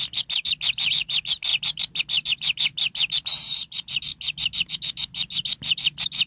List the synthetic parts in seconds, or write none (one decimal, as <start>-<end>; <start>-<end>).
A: none